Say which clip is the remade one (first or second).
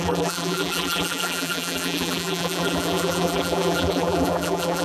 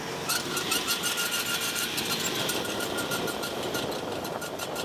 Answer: first